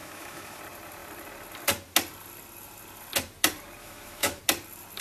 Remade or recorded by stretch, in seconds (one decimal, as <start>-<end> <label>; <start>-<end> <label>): 0.0-0.6 remade; 0.6-3.8 recorded; 3.8-4.4 remade; 4.4-5.0 recorded